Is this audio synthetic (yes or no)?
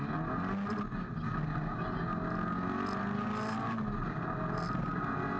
no